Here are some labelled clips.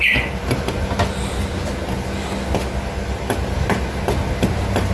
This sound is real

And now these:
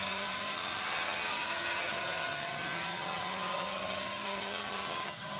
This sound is fake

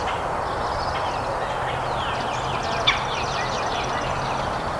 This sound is real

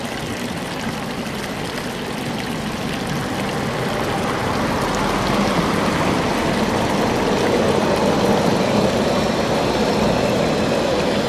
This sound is real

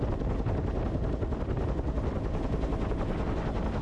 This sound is real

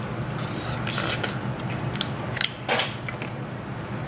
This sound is real